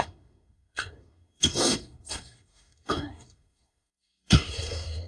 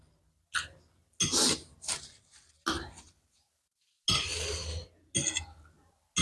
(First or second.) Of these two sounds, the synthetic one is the first